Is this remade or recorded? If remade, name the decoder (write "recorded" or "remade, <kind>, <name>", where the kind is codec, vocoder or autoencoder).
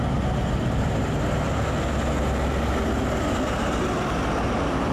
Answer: recorded